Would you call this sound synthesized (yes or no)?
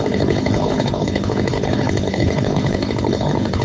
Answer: yes